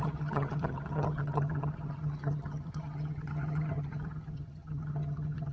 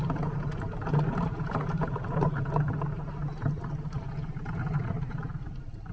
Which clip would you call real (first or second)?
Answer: second